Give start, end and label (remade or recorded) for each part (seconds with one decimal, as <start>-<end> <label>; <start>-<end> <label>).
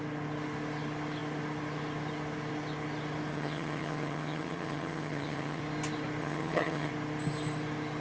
0.0-3.3 recorded; 3.3-5.6 remade; 5.6-6.2 recorded; 6.2-6.9 remade; 6.9-8.0 recorded